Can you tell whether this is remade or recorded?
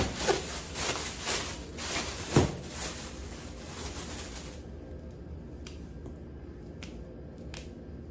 recorded